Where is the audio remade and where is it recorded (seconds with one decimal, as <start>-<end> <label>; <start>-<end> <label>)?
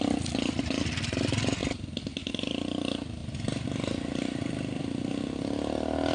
0.0-3.2 recorded; 3.2-4.8 remade; 4.8-6.1 recorded